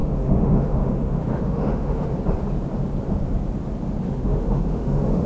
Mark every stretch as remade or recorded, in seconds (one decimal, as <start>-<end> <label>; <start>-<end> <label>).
0.0-2.1 remade; 2.1-4.0 recorded; 4.0-5.3 remade